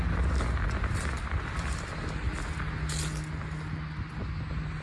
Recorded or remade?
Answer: recorded